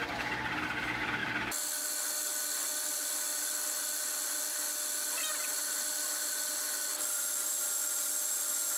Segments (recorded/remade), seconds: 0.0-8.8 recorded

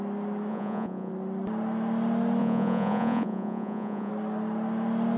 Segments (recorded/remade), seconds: 0.0-0.5 recorded; 0.5-1.1 remade; 1.1-2.4 recorded; 2.4-4.1 remade; 4.1-5.2 recorded

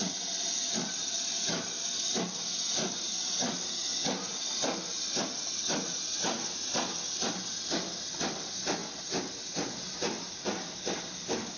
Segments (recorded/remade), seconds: 0.0-11.6 recorded